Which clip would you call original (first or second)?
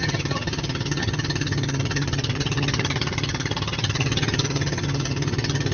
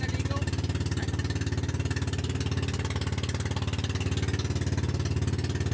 second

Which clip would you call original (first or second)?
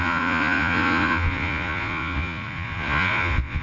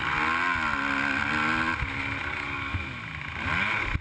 second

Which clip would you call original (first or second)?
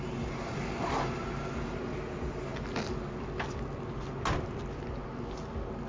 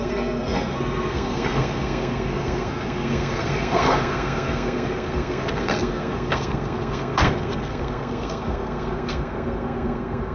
first